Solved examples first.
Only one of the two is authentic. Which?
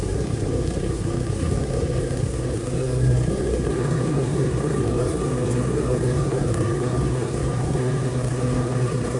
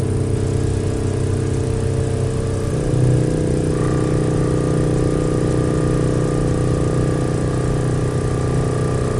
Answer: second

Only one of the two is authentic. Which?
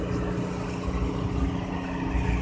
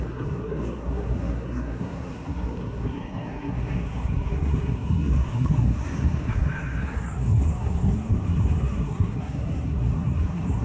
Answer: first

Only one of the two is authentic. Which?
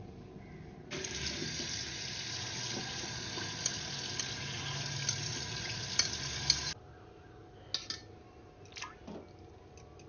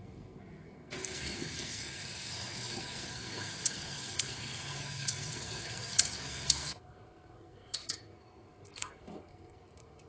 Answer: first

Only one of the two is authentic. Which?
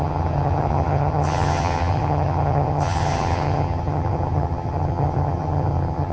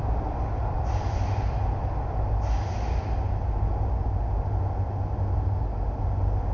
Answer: second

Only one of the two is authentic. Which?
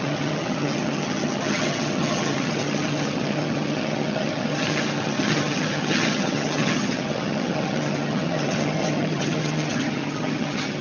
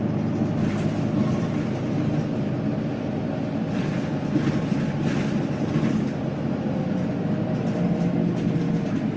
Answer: second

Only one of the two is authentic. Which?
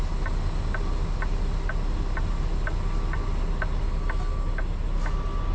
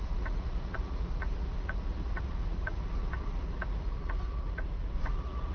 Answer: first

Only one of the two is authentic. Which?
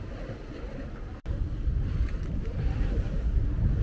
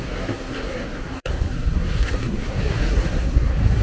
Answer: first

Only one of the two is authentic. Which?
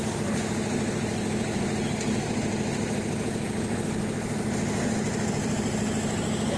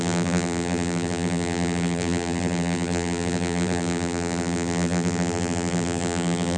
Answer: first